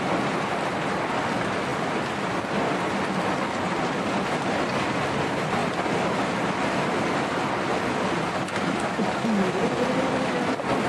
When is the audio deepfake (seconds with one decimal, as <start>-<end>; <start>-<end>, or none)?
none